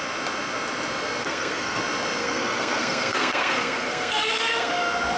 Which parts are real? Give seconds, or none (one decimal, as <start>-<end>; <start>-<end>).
0.0-1.2; 1.8-2.2; 4.7-5.2